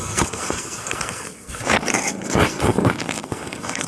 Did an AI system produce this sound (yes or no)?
yes